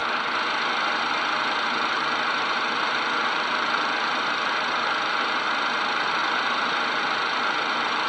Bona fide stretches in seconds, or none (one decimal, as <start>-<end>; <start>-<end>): 0.0-1.0; 6.2-7.4